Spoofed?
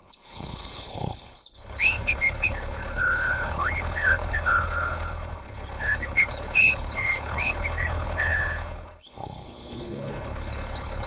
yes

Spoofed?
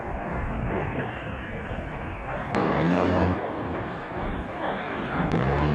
yes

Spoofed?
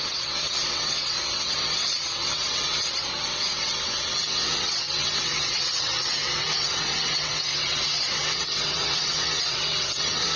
yes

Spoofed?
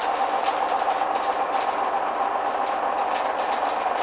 no